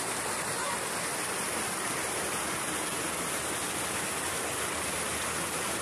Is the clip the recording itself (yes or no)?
yes